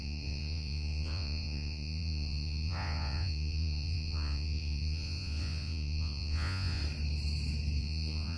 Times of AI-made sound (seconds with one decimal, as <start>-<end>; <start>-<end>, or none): 0.0-6.8; 7.8-8.4